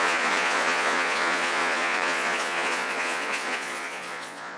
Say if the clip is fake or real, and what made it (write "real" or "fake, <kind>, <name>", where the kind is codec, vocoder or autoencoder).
fake, vocoder, Vocos